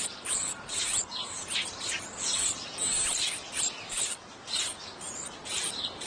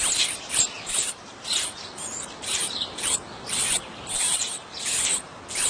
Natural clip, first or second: first